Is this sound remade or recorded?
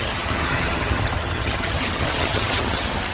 remade